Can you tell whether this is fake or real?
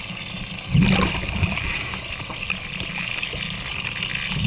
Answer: real